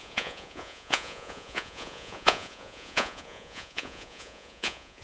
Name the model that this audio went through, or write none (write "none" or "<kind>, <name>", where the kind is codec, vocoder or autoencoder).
vocoder, Vocos